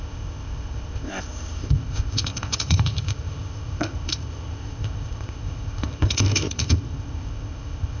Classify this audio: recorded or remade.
remade